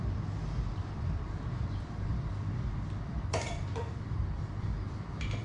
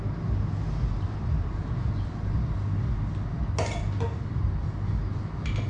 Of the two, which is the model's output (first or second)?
first